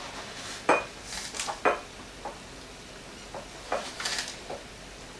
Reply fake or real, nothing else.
real